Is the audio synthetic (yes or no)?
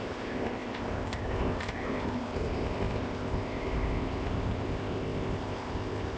yes